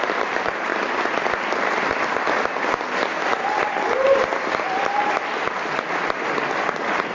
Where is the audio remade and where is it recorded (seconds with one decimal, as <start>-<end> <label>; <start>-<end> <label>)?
0.0-7.1 recorded